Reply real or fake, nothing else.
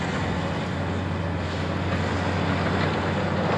real